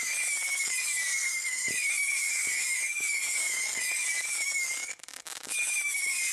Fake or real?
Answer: fake